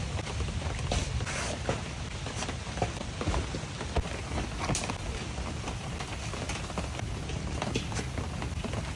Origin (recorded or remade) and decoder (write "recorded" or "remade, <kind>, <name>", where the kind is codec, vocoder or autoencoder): recorded